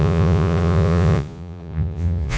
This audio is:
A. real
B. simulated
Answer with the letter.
B